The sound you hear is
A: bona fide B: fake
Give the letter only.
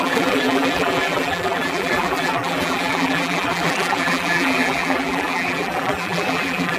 B